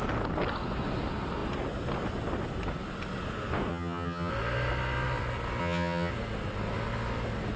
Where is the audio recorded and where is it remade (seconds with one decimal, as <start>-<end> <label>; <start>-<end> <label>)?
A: 0.0-3.7 recorded; 3.7-4.3 remade; 4.3-5.6 recorded; 5.6-6.1 remade; 6.1-7.6 recorded